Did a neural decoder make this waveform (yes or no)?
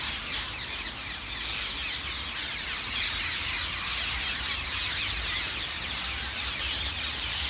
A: no